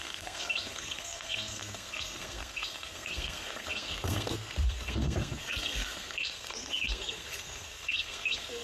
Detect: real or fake fake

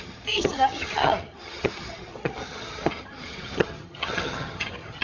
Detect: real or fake fake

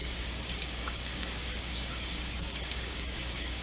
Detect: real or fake fake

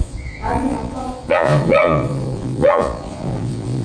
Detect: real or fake fake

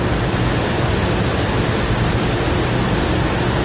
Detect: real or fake real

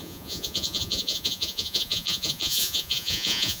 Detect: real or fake fake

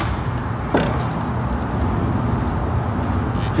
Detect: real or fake real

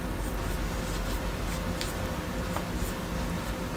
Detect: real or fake real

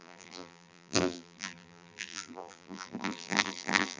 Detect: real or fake fake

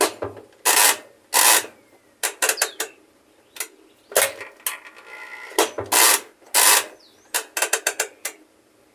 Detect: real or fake real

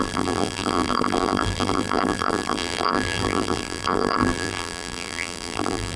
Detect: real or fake fake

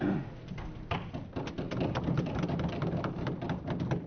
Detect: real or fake real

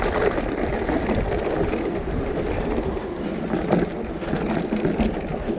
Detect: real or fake real